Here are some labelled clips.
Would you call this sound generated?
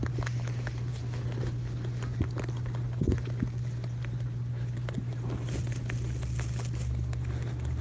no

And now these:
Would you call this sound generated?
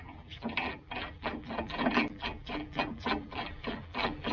yes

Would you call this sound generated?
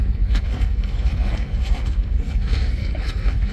yes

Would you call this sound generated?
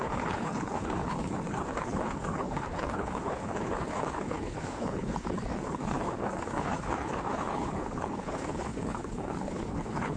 yes